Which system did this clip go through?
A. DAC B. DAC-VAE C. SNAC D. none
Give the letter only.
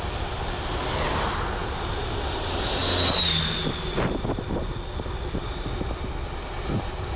D